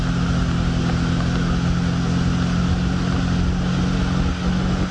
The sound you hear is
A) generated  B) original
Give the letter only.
B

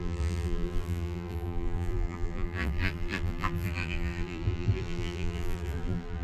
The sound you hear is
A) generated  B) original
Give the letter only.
A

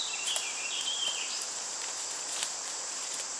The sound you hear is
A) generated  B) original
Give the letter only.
A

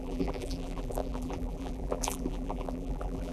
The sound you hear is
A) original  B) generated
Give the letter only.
B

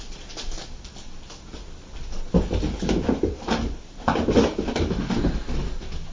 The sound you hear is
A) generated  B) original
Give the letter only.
B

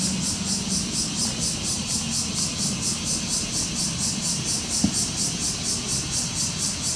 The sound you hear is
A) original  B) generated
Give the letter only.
A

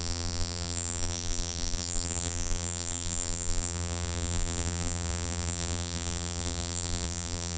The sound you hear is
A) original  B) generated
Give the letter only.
B